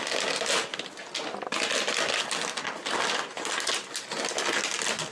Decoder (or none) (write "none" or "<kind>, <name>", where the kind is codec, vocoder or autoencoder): none